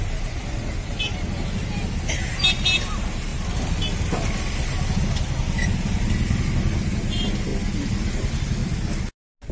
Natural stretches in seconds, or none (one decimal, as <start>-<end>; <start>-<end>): 0.0-9.5

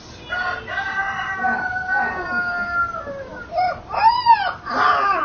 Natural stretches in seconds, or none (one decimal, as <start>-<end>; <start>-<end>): 0.0-3.3; 4.1-5.2

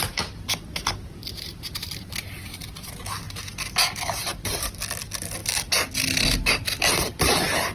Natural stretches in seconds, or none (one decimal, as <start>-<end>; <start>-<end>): 0.0-1.2; 2.4-7.7